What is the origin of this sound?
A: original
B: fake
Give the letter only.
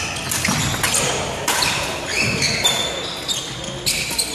A